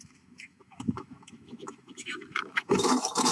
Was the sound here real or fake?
fake